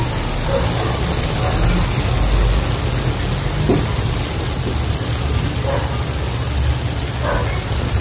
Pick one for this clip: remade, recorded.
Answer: recorded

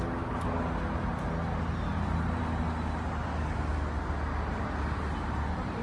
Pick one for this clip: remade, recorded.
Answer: recorded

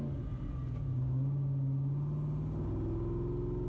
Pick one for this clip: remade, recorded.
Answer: recorded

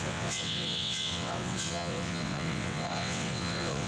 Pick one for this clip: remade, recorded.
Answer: remade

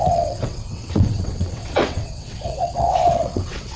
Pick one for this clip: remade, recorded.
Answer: remade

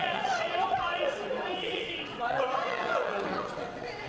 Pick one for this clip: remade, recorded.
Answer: remade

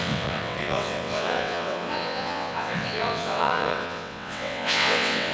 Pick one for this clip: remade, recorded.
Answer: remade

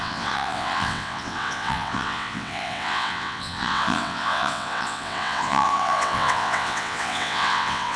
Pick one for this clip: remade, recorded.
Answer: remade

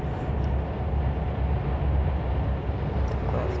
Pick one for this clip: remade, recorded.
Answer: recorded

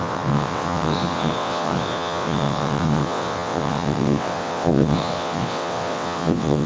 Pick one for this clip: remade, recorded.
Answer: remade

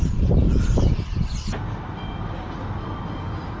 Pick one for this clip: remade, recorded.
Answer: recorded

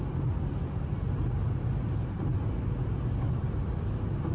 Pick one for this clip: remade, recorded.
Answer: recorded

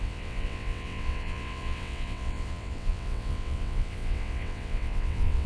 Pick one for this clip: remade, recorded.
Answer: remade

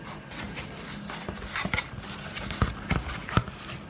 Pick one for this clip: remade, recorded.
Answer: recorded